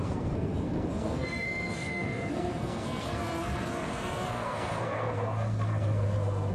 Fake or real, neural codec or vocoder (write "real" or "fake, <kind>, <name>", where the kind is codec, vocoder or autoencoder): fake, codec, SNAC